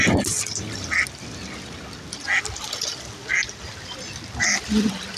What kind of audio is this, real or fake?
real